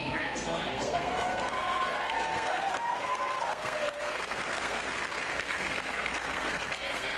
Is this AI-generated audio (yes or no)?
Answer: yes